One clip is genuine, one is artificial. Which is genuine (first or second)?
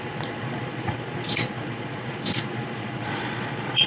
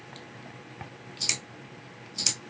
second